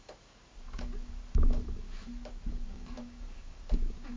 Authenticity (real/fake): fake